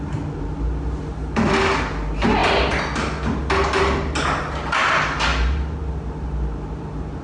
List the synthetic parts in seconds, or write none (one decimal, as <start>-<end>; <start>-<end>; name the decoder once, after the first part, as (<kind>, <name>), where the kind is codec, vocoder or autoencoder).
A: 5.3-7.2 (vocoder, BigVGAN v2)